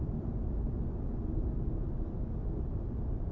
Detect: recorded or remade recorded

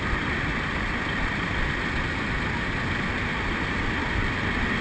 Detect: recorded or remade recorded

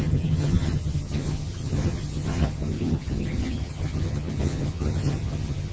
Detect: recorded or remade remade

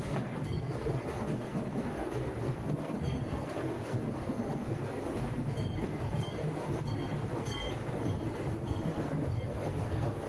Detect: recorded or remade remade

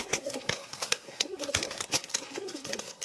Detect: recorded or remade remade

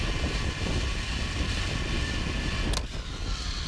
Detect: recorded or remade recorded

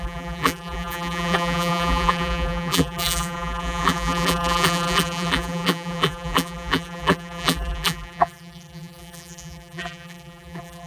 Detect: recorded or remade remade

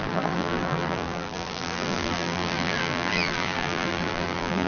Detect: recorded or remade remade